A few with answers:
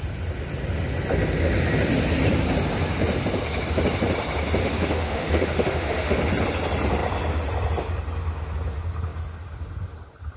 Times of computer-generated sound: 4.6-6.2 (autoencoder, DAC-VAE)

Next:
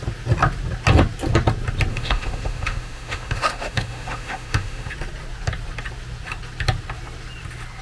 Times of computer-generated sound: 1.9-4.9 (autoencoder, DAC-VAE)

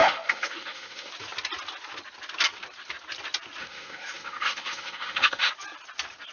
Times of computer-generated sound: 0.0-1.1 (autoencoder, DAC-VAE); 3.6-5.5

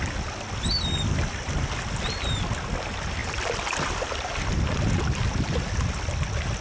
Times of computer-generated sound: none

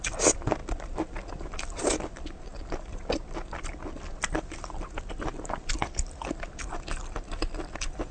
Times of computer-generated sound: none

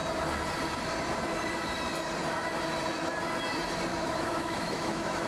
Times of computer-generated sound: 3.9-5.3 (autoencoder, DAC-VAE)